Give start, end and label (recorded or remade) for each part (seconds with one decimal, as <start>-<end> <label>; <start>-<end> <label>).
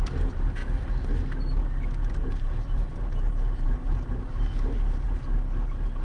0.0-2.0 recorded; 2.0-5.2 remade; 5.2-6.0 recorded